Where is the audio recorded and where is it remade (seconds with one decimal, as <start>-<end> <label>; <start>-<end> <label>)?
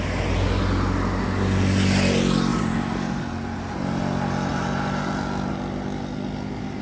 0.0-2.5 recorded; 2.5-4.0 remade; 4.0-4.5 recorded; 4.5-5.5 remade; 5.5-6.8 recorded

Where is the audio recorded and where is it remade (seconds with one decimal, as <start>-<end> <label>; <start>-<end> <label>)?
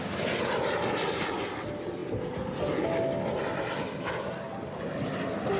0.0-5.6 recorded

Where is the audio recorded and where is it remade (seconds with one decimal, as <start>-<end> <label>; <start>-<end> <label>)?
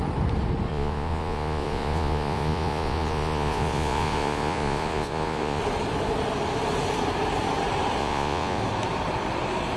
0.0-0.7 recorded; 0.7-5.6 remade; 5.6-8.0 recorded; 8.0-8.6 remade; 8.6-9.8 recorded